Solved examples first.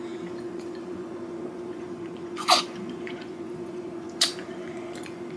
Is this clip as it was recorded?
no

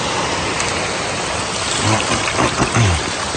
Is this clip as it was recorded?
yes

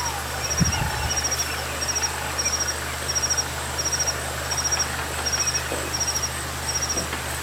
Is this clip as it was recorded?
yes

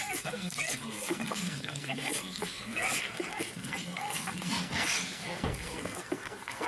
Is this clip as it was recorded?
no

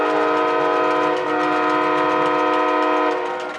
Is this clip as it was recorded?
yes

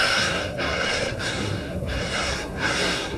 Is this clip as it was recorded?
no